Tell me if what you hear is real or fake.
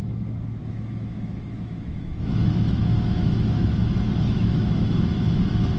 fake